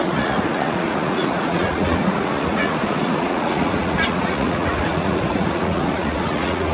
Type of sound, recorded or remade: remade